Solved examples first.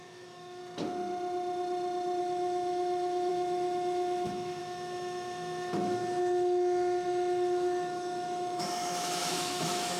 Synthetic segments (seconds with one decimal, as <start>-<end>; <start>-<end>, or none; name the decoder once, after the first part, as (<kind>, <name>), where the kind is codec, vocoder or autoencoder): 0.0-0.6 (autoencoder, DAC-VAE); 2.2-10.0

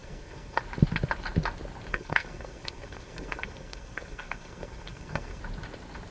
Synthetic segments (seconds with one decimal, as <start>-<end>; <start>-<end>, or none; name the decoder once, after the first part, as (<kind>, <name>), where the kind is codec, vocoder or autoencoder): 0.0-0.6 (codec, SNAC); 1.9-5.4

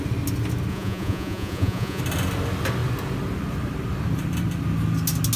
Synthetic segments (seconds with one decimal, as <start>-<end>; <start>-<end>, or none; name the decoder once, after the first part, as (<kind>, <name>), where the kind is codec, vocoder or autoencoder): 0.7-2.0 (vocoder, Vocos)

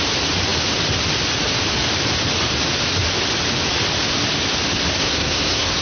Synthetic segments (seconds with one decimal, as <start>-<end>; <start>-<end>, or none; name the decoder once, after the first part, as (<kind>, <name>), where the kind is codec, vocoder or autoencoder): 5.0-5.8 (codec, SNAC)

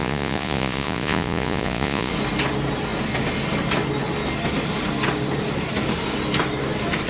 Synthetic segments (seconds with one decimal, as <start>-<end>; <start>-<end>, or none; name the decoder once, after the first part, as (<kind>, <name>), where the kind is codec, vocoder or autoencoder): 0.0-2.1 (vocoder, Vocos)